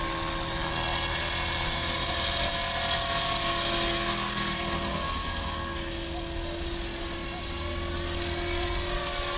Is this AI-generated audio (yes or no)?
no